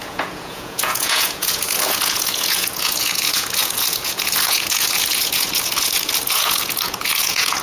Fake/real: fake